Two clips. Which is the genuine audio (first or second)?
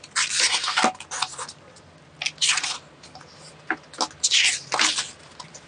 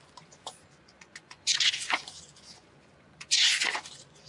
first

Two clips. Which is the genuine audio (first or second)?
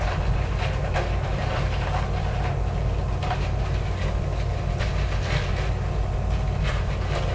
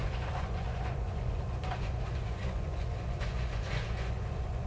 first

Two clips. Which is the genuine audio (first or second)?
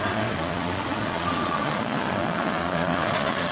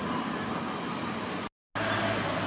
second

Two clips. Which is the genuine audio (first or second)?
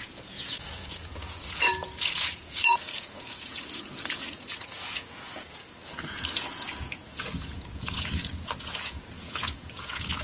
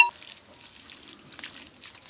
second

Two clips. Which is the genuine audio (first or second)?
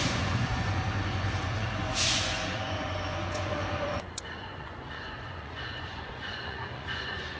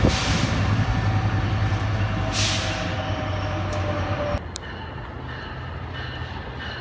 second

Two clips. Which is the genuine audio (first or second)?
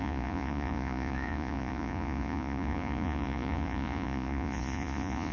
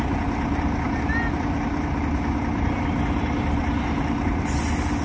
second